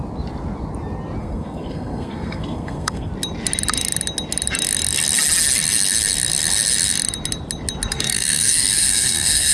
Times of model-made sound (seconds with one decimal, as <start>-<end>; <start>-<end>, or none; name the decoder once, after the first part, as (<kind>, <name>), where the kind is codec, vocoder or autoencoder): 1.2-3.1 (codec, SNAC); 7.9-9.5